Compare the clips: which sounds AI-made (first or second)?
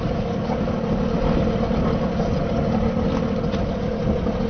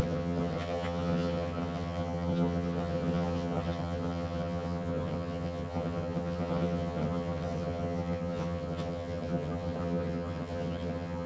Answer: second